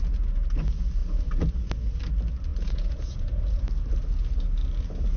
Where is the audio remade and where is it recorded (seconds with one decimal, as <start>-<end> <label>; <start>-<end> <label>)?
0.0-2.5 recorded; 2.5-3.6 remade; 3.6-5.2 recorded